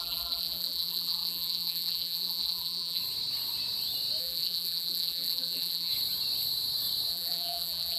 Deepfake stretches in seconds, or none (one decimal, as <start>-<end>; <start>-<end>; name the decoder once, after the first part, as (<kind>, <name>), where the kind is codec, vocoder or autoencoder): 0.0-3.0 (vocoder, BigVGAN v2); 4.2-5.9; 7.1-8.0